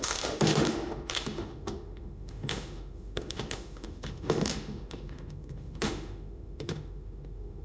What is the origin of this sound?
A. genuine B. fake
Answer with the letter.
B